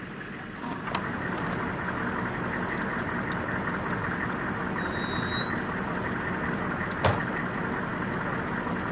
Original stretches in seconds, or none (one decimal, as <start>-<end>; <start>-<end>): 0.0-8.9